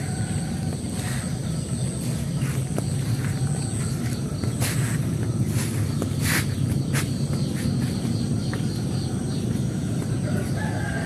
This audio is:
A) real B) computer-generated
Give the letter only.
A